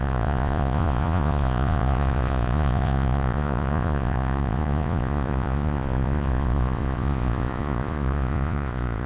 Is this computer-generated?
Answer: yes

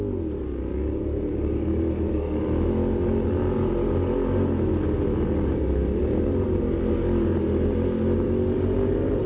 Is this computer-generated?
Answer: no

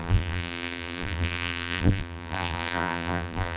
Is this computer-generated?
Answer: yes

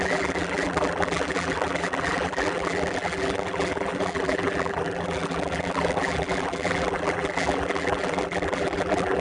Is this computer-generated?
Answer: yes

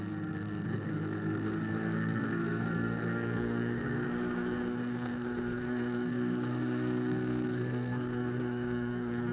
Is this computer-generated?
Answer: yes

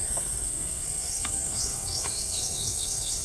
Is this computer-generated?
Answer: yes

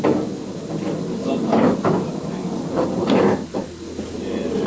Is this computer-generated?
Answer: no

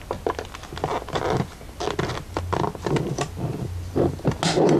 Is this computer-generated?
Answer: no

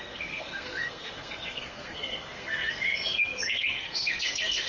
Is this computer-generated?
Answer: yes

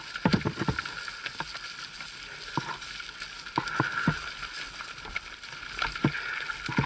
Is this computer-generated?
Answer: no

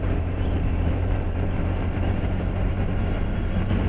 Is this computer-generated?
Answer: yes